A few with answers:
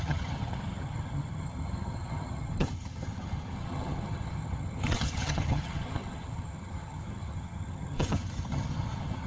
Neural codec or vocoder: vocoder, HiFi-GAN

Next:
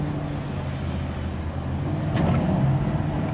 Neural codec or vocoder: none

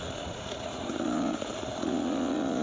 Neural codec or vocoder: vocoder, Vocos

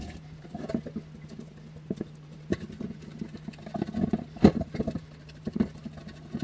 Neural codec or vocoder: none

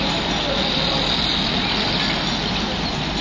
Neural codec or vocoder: none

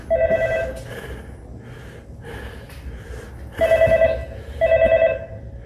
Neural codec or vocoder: none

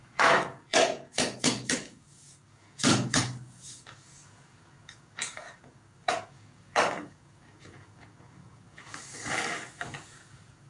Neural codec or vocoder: codec, DAC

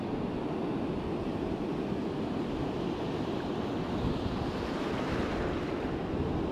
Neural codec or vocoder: none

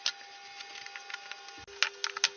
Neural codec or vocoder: none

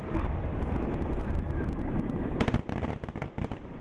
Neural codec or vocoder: vocoder, BigVGAN v2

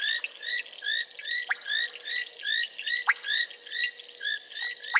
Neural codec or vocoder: none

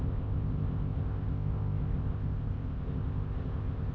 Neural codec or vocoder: codec, ZipCodec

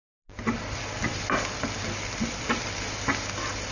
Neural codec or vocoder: none